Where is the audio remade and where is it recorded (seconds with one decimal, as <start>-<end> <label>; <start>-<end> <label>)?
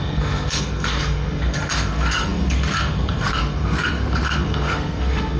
0.0-5.4 remade